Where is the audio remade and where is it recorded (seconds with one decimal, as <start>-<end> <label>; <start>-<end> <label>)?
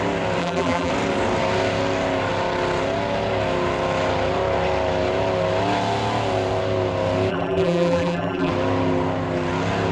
0.0-0.4 recorded; 0.4-0.9 remade; 0.9-7.3 recorded; 7.3-8.5 remade; 8.5-9.9 recorded